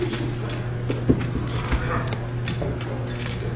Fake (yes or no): no